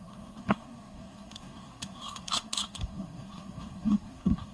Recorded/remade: remade